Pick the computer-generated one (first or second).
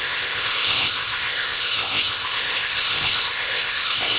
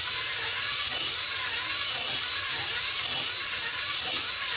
first